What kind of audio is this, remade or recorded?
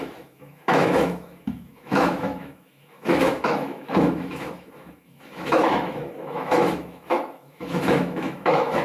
remade